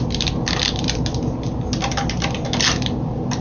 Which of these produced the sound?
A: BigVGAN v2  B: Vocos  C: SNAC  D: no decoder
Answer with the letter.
D